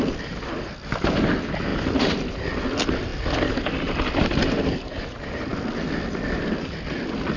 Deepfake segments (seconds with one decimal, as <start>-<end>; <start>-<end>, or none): none